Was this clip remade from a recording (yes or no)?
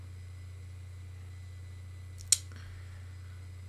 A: no